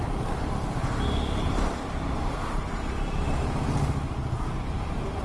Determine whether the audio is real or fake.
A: real